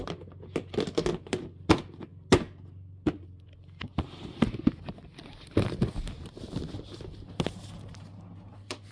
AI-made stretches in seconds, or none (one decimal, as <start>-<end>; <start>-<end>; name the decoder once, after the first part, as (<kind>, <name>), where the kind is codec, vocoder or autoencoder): none

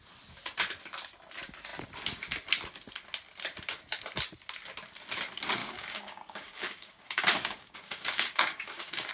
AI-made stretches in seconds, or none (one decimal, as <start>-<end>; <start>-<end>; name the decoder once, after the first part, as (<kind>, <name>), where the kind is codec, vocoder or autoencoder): 5.6-9.1 (codec, DAC)

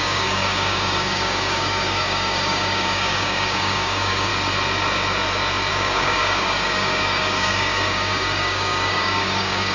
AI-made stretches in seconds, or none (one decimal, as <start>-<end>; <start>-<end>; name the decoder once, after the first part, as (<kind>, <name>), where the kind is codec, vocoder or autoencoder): 0.0-4.3 (codec, DAC); 5.7-9.7

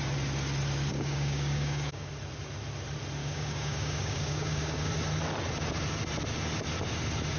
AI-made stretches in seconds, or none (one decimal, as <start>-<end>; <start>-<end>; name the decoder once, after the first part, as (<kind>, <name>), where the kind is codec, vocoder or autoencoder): 0.9-2.1 (codec, DAC); 3.2-4.9

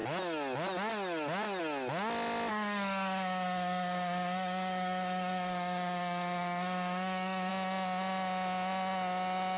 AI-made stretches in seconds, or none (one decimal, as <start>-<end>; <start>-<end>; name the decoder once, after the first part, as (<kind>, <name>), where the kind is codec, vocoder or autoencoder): 2.5-7.5 (codec, DAC)

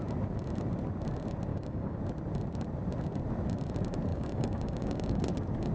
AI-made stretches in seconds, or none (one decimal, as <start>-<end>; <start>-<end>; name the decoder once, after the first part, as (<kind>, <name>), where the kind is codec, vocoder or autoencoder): 1.5-2.0 (codec, DAC); 4.1-5.2